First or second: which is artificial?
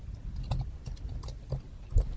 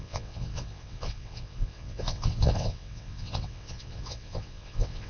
second